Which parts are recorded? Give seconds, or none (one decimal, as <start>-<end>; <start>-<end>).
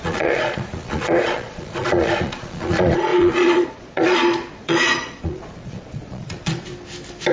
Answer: 6.7-7.3